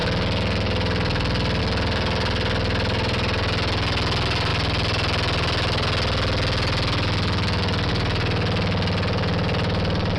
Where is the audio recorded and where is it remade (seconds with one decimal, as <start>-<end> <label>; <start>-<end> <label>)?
0.0-10.2 recorded